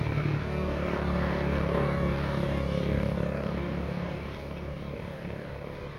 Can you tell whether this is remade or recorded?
remade